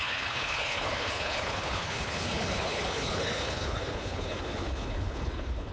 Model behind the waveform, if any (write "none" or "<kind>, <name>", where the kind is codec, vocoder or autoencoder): codec, HILCodec